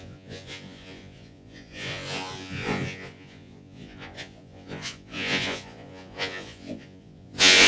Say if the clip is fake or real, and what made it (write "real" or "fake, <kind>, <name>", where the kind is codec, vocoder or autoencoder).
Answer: fake, vocoder, Vocos